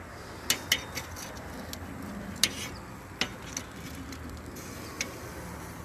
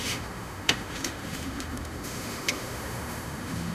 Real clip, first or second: first